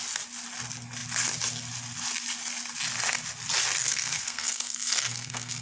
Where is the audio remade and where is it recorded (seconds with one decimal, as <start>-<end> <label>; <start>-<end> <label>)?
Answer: 0.0-3.8 recorded; 3.8-5.6 remade

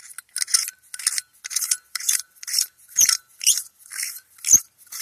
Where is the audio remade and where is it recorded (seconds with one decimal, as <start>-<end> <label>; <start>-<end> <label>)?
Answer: 0.0-1.5 recorded; 1.5-3.9 remade; 3.9-5.0 recorded

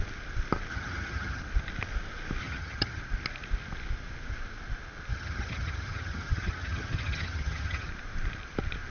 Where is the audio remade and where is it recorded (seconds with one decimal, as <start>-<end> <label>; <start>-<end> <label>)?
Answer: 0.0-0.7 recorded; 0.7-1.4 remade; 1.4-2.4 recorded; 2.4-3.0 remade; 3.0-5.1 recorded; 5.1-7.9 remade; 7.9-8.9 recorded

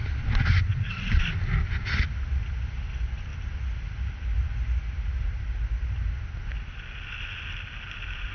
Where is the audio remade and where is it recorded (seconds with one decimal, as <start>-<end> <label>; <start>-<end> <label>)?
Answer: 0.0-8.3 recorded

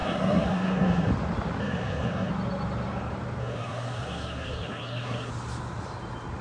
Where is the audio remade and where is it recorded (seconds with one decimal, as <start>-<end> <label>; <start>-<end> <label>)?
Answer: 0.0-1.1 remade; 1.1-1.6 recorded; 1.6-2.3 remade; 2.3-3.4 recorded; 3.4-5.3 remade; 5.3-6.4 recorded